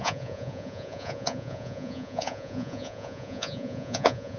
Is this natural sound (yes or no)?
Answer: no